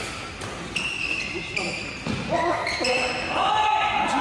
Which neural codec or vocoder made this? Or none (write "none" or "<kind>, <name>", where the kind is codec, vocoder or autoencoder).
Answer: none